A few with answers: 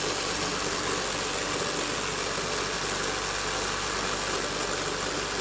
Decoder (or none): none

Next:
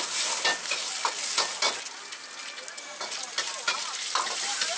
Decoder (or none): none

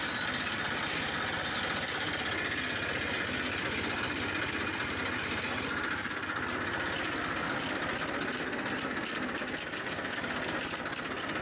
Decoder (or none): none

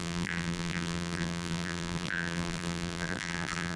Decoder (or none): vocoder, BigVGAN v2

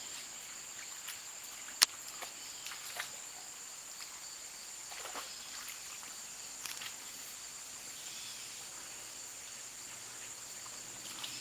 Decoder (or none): none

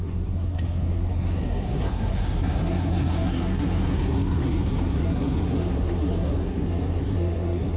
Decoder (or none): codec, SNAC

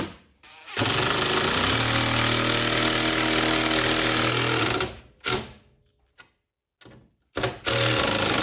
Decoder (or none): none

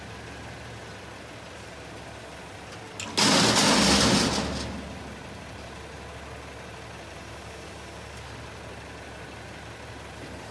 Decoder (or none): none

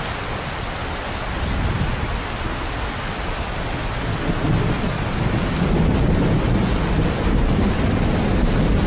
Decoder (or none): none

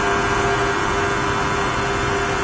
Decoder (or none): none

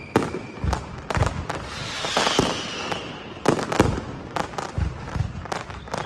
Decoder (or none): none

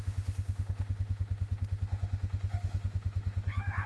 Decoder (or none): autoencoder, DAC-VAE